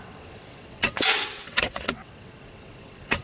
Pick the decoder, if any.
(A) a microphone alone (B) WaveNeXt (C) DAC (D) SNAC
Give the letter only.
B